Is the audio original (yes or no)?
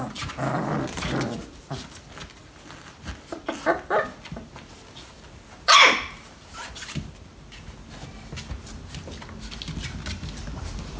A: yes